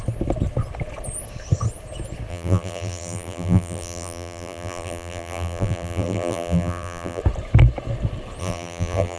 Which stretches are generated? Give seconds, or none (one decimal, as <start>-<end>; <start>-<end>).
2.3-7.2; 8.4-9.2